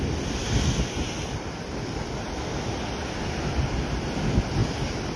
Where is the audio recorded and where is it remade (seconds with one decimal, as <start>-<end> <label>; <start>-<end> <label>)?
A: 0.0-5.2 recorded

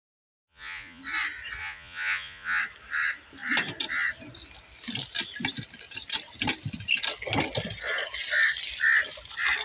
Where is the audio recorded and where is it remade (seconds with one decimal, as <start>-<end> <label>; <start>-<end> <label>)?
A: 0.0-1.0 remade; 1.0-1.6 recorded; 1.6-2.6 remade; 2.6-9.6 recorded

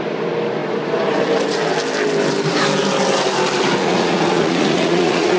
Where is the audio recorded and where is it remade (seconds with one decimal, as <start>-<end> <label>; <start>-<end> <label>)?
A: 0.0-3.8 recorded; 3.8-5.4 remade

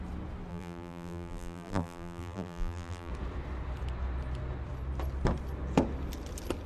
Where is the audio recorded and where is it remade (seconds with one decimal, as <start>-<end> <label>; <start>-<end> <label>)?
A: 0.0-0.5 recorded; 0.5-3.1 remade; 3.1-6.7 recorded